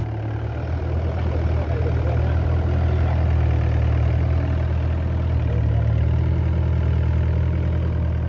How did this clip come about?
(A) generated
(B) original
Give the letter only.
B